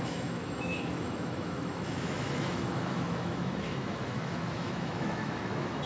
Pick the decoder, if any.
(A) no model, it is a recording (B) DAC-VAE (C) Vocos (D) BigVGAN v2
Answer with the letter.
B